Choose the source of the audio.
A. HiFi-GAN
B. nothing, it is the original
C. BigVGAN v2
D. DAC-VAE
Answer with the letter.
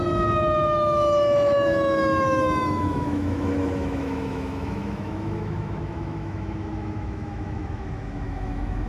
D